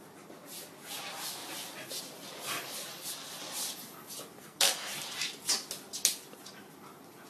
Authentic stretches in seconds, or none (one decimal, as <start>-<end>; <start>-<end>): 0.0-4.4; 4.9-7.3